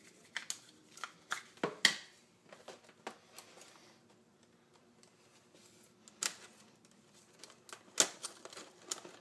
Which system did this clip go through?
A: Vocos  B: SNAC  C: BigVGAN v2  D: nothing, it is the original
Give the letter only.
D